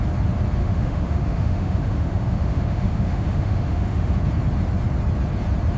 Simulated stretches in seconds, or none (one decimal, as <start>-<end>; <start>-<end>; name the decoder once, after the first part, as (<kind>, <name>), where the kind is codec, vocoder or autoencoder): 0.6-4.1 (autoencoder, DAC-VAE)